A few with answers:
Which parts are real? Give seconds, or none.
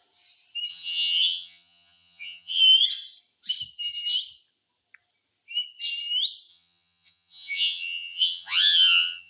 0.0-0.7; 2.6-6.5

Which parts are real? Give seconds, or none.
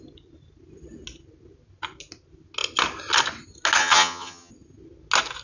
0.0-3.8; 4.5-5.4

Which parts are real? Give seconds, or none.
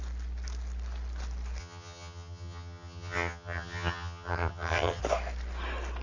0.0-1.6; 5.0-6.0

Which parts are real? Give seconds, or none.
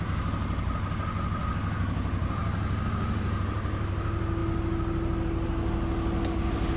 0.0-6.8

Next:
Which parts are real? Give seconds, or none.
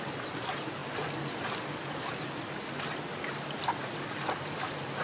0.0-5.0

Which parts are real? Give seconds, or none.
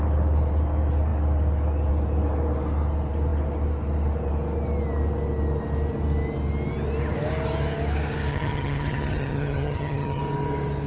0.0-8.3; 10.2-10.9